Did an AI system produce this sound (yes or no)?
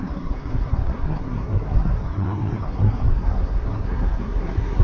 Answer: yes